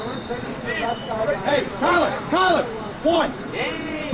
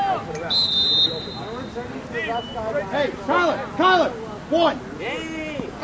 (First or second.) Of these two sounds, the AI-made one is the first